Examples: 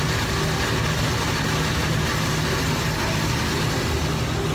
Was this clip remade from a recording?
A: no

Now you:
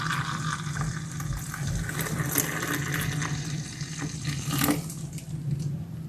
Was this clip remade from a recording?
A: no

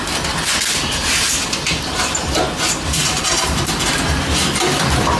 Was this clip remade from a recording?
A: no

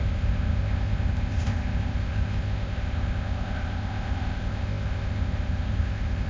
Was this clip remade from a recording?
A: yes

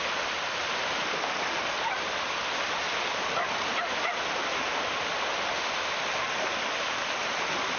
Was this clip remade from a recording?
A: no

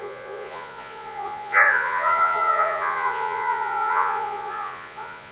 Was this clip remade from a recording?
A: yes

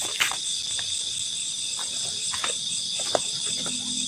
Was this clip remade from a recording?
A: no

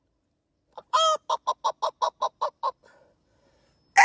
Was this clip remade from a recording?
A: no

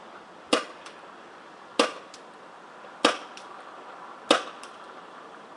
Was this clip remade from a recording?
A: yes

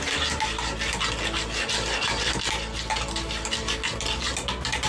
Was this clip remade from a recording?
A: no